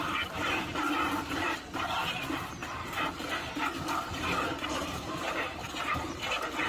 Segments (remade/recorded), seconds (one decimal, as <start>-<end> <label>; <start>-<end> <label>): 0.0-2.6 recorded; 2.6-6.3 remade; 6.3-6.7 recorded